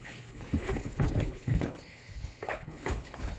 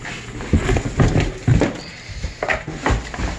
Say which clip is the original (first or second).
second